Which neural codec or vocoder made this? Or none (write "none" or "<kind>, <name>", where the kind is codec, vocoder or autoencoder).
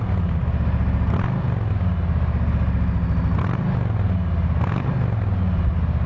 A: none